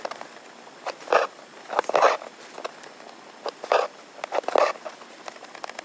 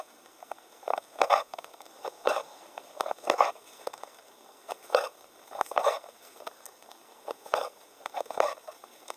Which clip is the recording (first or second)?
first